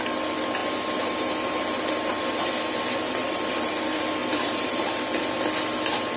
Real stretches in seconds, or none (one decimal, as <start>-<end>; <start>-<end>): 0.0-4.2; 5.2-6.2